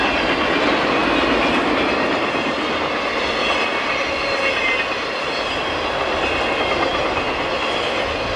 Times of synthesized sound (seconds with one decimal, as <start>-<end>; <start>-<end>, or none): none